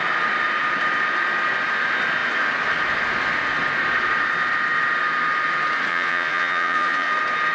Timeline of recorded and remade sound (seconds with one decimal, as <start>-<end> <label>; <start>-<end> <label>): 0.0-5.9 recorded; 5.9-7.1 remade; 7.1-7.5 recorded